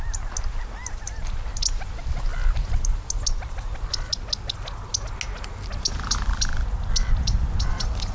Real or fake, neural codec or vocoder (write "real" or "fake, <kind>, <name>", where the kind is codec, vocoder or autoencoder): real